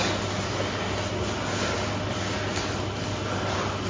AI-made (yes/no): no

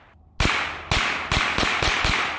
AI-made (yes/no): no